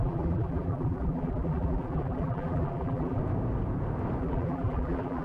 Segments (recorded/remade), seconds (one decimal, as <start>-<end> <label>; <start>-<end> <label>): 0.0-3.2 remade; 3.2-4.2 recorded; 4.2-5.2 remade